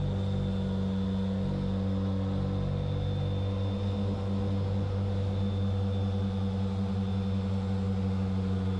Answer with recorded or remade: recorded